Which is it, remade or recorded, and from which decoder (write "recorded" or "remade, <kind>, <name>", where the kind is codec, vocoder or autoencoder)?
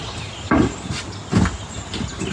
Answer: recorded